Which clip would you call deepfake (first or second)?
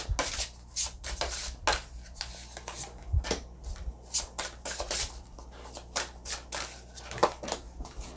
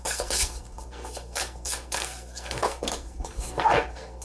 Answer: second